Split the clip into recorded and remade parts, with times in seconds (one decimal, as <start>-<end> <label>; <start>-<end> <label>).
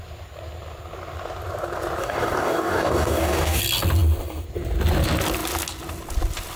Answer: 0.0-2.0 recorded; 2.0-3.6 remade; 3.6-6.6 recorded